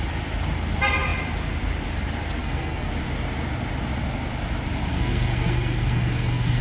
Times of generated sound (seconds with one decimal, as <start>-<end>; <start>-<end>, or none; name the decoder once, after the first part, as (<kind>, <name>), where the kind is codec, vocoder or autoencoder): 2.4-2.9 (codec, SNAC); 4.9-6.6